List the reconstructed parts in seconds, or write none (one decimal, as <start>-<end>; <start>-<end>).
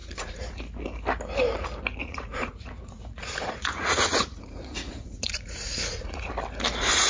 0.0-0.6; 2.0-6.3